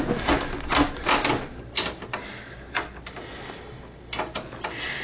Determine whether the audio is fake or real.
real